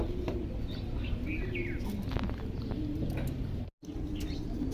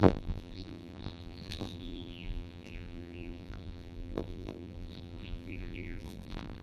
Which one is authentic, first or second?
first